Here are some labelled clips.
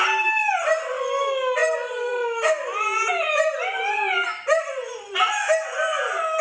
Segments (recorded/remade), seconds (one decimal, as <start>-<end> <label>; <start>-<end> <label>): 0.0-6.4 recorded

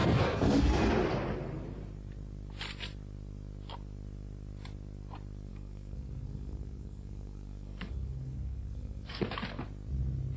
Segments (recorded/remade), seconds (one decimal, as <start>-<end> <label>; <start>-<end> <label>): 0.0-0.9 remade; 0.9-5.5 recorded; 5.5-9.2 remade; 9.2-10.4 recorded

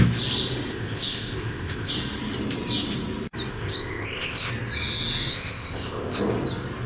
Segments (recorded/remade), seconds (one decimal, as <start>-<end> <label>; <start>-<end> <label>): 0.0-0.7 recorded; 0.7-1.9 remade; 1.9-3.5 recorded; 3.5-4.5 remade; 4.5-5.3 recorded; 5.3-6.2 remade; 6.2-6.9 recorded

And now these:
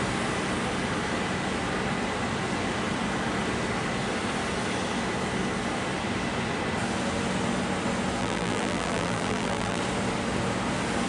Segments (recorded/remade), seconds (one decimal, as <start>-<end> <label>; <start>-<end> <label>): 0.0-8.2 recorded; 8.2-9.8 remade; 9.8-11.1 recorded

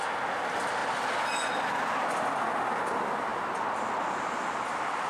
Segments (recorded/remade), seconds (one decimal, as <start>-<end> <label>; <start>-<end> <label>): 0.0-5.1 recorded

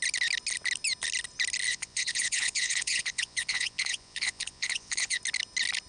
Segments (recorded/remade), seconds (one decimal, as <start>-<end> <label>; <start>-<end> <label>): 0.0-1.7 recorded; 1.7-5.2 remade; 5.2-5.9 recorded